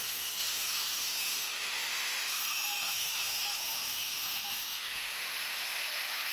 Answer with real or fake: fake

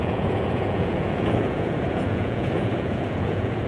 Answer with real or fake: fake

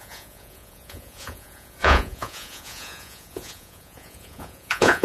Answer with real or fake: fake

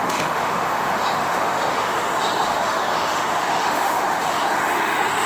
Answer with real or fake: fake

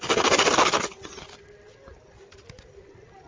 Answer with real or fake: real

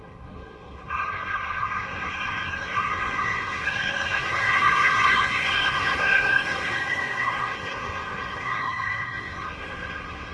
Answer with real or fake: fake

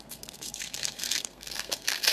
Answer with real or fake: fake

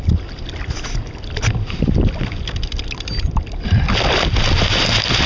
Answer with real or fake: real